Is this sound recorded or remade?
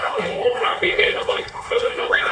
remade